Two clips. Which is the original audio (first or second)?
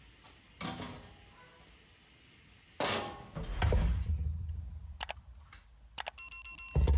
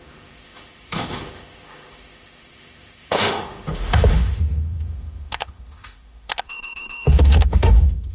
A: first